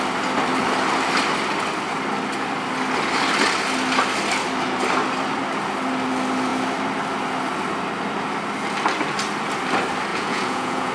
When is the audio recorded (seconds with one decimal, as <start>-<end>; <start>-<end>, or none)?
0.0-10.1